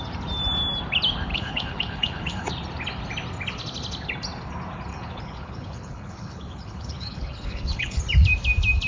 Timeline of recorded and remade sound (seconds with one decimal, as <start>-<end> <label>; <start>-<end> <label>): 0.0-1.3 recorded; 1.3-2.5 remade; 2.5-4.9 recorded; 4.9-8.0 remade; 8.0-8.9 recorded